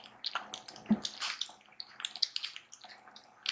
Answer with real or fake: real